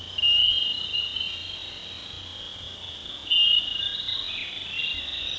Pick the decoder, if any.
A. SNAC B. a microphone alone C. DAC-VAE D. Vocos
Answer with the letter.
B